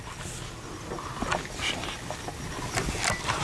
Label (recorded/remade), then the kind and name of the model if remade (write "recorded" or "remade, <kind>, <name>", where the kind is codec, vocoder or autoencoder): recorded